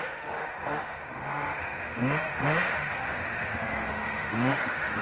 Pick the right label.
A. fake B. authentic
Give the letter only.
A